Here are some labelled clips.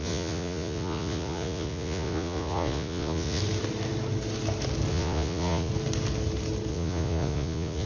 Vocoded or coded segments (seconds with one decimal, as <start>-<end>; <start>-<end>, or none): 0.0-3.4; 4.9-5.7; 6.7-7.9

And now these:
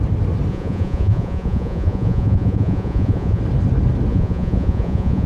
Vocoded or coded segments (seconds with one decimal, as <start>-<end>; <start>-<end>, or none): 0.5-3.4; 4.1-5.3

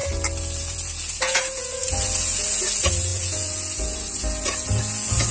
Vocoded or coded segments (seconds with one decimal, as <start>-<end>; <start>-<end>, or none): 0.6-5.3

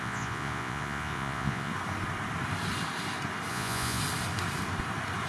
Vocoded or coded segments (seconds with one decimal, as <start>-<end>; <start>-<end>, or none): 0.0-1.7; 3.5-4.0

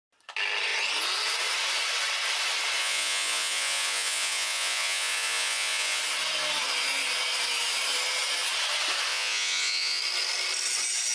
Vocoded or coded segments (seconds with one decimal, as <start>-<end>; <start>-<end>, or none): 2.8-6.0; 9.1-10.0

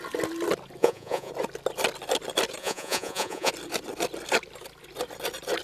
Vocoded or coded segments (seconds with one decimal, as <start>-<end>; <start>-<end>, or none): 0.8-1.3; 2.6-3.5

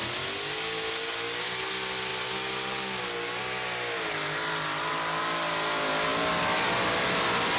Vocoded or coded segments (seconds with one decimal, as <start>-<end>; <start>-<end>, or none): none

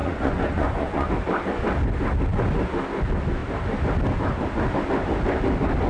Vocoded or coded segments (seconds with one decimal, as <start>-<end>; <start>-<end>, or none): 0.0-1.1